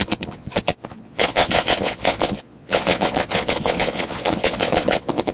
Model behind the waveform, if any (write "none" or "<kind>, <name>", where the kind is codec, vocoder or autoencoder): vocoder, Vocos